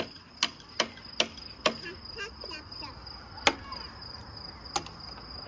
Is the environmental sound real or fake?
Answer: real